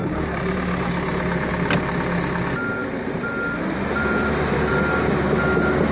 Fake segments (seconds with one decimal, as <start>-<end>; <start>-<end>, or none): 2.8-4.7